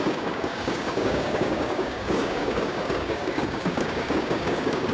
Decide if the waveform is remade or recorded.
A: remade